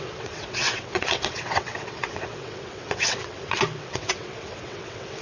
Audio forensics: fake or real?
fake